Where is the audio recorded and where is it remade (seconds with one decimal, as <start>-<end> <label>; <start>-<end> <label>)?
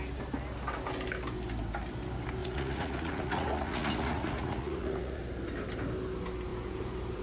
0.0-2.4 recorded; 2.4-5.2 remade; 5.2-7.2 recorded